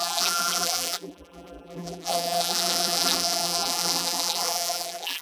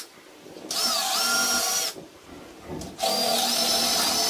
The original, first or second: second